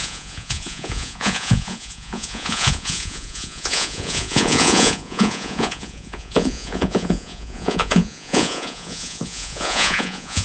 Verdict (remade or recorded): remade